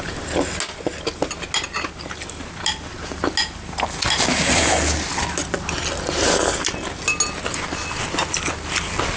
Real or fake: real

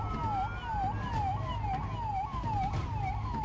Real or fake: real